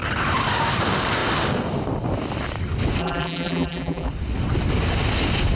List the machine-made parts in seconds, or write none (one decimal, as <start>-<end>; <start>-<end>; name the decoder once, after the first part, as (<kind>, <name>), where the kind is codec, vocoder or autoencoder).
3.0-4.1 (vocoder, BigVGAN v2)